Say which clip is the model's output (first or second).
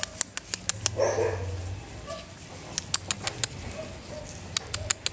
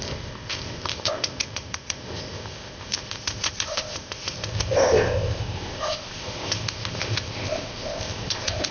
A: second